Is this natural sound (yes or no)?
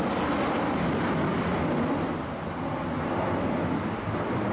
yes